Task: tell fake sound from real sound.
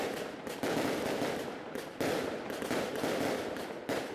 fake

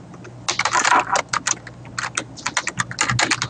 real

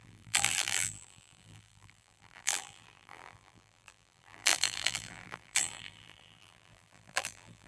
fake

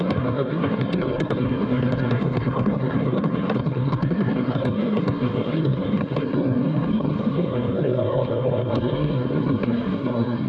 fake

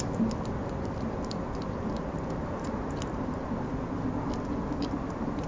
real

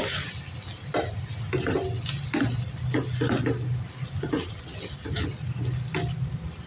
real